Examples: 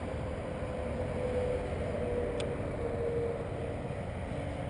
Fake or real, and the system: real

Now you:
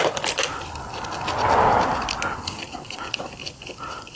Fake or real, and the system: real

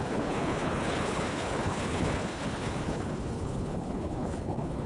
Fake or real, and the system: fake, codec, HILCodec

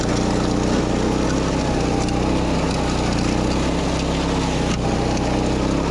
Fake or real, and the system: real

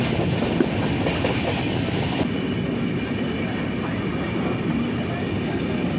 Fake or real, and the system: real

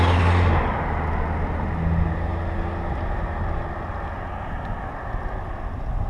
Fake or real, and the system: real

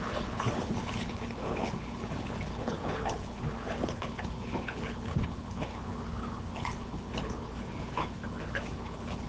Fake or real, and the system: fake, codec, HILCodec